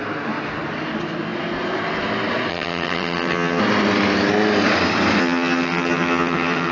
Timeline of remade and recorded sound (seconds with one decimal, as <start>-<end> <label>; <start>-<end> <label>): 0.0-2.5 recorded; 2.5-3.6 remade; 3.6-5.2 recorded; 5.2-6.7 remade